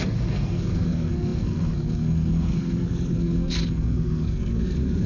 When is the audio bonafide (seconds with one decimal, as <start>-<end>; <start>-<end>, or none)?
none